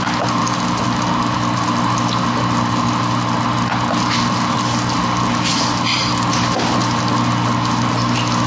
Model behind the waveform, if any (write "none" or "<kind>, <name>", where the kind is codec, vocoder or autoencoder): none